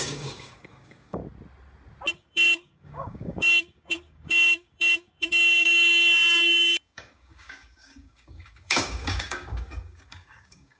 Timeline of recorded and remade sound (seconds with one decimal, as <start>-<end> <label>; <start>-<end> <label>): 0.0-1.2 remade; 1.2-2.1 recorded; 2.1-10.8 remade